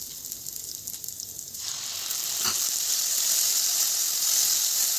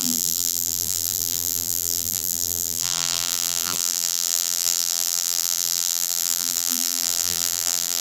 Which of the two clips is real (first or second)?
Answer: first